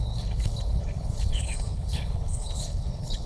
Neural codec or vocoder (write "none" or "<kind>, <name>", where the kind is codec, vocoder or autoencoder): codec, HILCodec